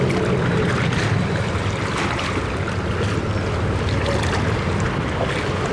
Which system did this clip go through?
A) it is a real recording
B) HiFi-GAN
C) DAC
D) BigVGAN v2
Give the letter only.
A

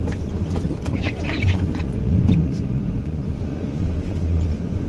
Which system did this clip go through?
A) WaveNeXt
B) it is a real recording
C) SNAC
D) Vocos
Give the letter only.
D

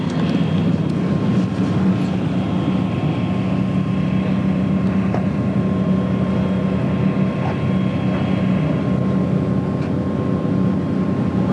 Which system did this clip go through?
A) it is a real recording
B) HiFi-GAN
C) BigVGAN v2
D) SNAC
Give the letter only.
A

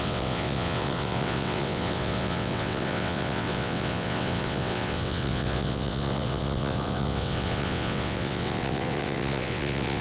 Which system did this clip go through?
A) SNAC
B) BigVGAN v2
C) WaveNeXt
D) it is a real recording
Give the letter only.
C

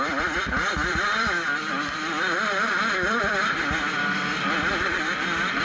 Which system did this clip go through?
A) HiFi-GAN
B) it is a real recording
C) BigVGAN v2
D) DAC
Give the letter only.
C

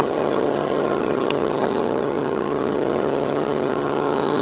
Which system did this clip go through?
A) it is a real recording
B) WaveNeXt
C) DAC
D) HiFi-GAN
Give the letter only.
D